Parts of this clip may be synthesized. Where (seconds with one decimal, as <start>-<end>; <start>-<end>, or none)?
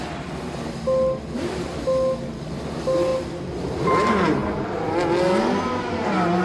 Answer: none